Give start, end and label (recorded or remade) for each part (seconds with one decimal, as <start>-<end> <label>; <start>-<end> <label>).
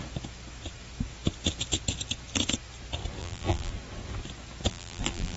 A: 0.0-3.2 recorded; 3.2-3.7 remade; 3.7-4.7 recorded; 4.7-5.4 remade